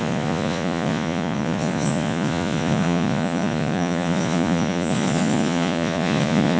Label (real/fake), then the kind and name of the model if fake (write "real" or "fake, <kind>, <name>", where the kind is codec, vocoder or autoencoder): fake, vocoder, Vocos